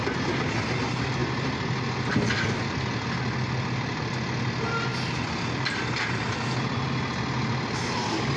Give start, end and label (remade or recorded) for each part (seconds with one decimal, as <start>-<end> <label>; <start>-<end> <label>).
0.0-8.4 recorded